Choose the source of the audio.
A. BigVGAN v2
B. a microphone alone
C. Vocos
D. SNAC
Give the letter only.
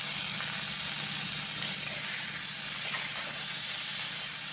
B